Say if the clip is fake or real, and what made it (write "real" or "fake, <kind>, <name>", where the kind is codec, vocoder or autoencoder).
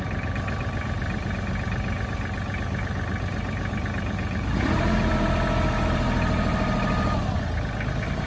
real